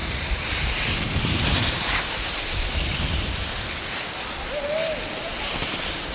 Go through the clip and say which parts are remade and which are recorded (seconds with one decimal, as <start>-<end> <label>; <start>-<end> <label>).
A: 0.0-3.7 remade; 3.7-6.1 recorded